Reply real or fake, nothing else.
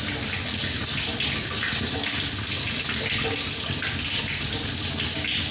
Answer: real